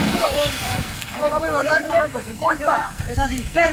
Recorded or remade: remade